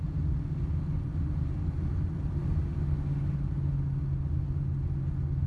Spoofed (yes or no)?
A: no